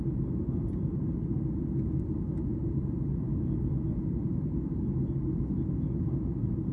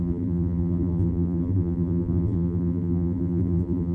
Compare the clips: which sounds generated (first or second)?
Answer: second